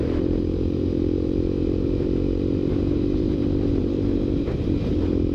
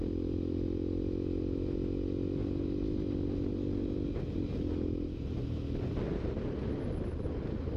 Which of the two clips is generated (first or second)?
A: first